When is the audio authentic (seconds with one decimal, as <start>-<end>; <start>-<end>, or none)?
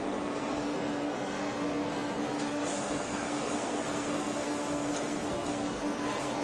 none